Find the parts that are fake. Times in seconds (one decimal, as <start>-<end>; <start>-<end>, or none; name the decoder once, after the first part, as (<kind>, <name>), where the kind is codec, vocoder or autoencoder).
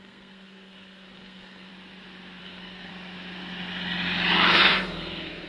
0.0-1.7 (codec, SNAC); 2.4-2.9; 4.5-5.5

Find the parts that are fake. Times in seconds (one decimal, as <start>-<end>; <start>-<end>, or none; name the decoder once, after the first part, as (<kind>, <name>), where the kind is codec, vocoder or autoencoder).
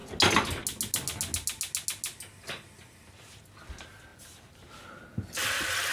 none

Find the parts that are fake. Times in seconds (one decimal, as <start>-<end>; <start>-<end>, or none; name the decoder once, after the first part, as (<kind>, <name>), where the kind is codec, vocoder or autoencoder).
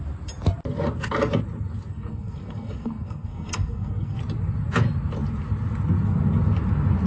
1.9-4.2 (codec, SNAC)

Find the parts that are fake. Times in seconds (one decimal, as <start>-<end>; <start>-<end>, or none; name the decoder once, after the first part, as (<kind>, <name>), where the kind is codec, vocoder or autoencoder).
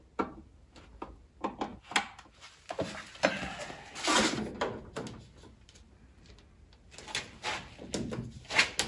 none